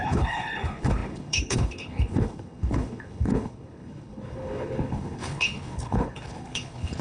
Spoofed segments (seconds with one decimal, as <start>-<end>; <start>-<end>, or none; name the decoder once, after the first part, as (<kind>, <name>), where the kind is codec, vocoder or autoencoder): 0.0-7.0 (codec, HILCodec)